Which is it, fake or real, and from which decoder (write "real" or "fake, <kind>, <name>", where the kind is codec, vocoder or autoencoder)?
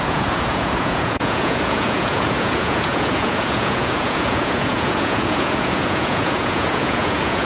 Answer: fake, vocoder, Vocos